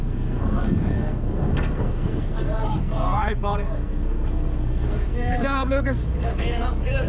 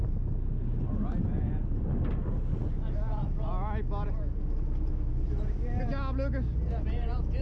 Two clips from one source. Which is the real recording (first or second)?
second